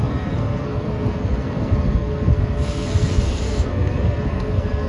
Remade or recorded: remade